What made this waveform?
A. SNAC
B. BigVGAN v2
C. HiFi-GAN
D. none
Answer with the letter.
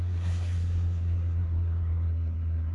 A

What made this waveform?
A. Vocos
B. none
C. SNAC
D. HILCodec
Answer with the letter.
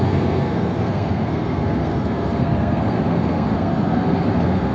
C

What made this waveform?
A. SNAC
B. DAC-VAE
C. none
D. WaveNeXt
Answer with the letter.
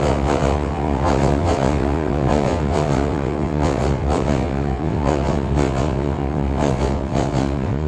D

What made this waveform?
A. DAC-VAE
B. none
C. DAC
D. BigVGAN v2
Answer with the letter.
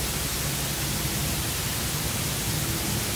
B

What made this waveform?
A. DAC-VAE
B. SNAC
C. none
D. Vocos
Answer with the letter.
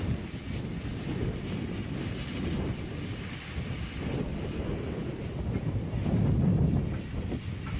C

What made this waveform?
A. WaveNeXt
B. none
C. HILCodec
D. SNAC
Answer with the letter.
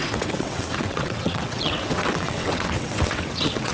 A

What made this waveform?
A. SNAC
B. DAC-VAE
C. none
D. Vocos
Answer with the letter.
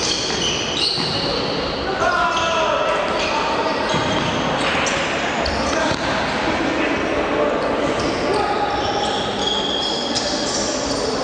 C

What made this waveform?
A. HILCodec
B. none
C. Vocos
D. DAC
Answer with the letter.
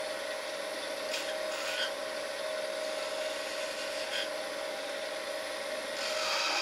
B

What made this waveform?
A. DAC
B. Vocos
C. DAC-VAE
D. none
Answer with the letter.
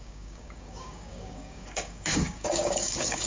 A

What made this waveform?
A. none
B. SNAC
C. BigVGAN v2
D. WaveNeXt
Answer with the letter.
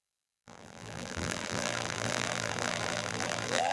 C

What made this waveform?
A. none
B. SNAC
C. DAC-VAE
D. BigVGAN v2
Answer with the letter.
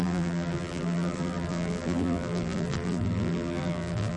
D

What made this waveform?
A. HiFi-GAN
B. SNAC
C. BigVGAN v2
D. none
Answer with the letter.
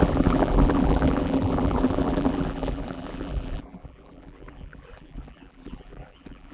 C